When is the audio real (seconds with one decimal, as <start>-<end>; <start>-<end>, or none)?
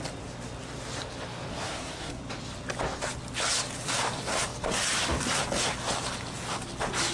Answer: 0.0-1.5; 2.2-7.1